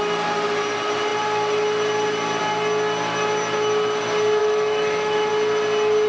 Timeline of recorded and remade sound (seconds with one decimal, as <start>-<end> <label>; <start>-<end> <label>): 0.0-4.4 recorded; 4.4-5.3 remade; 5.3-6.1 recorded